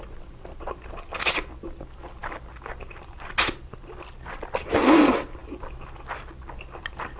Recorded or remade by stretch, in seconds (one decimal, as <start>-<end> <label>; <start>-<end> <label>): 0.0-7.2 recorded